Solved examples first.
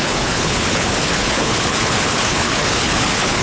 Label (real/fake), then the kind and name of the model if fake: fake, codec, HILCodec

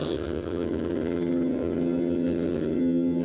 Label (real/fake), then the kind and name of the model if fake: fake, vocoder, HiFi-GAN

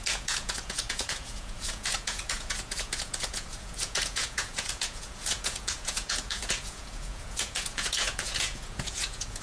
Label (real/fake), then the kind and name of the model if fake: fake, vocoder, Vocos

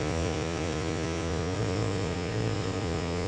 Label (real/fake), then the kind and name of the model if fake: fake, vocoder, Vocos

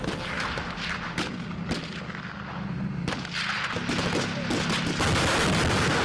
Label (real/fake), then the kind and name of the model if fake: real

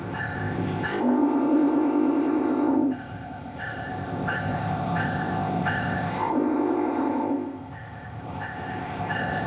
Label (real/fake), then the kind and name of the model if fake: fake, codec, ZipCodec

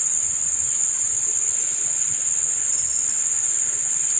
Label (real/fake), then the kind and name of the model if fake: real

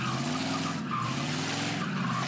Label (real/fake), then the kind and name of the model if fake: real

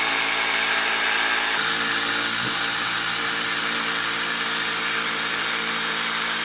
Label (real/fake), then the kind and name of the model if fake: fake, vocoder, BigVGAN v2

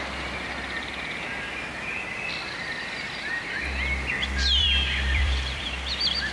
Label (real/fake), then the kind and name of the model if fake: fake, vocoder, BigVGAN v2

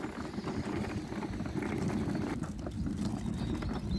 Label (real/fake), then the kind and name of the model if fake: real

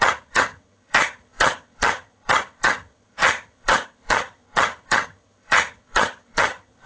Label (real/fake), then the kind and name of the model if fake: fake, vocoder, HiFi-GAN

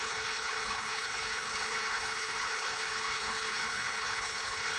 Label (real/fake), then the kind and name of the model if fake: fake, codec, HILCodec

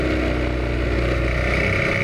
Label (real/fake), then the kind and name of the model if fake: real